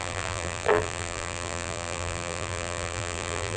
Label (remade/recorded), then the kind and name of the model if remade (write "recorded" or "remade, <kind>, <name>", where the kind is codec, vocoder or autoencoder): remade, vocoder, BigVGAN v2